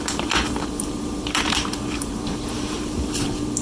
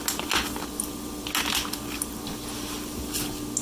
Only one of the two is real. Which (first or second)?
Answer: second